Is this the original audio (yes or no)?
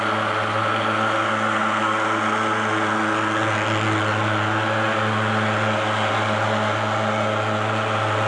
yes